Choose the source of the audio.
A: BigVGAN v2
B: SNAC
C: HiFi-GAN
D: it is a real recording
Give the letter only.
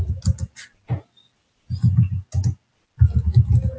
D